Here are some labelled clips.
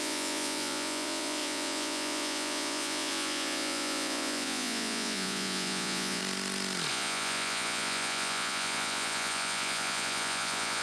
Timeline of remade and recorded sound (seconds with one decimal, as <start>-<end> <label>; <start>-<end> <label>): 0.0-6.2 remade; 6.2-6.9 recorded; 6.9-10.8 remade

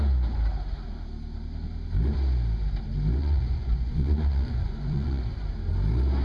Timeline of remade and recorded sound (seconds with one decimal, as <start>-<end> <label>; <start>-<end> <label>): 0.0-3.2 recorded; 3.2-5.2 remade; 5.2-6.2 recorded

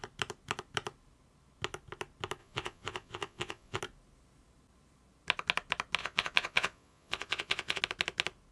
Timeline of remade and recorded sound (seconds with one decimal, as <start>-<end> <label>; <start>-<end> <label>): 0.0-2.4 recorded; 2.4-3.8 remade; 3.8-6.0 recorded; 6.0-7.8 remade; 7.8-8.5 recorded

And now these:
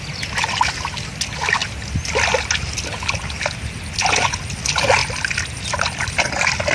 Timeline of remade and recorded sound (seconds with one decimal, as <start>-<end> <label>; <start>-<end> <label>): 0.0-6.7 recorded

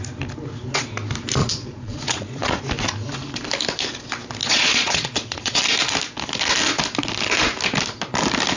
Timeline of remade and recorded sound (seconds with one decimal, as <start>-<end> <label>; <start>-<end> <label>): 0.0-1.4 recorded; 1.4-2.6 remade; 2.6-4.4 recorded; 4.4-5.6 remade; 5.6-8.6 recorded